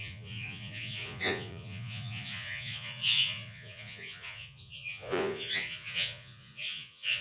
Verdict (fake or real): fake